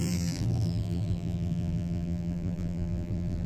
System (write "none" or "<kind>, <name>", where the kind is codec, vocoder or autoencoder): vocoder, BigVGAN v2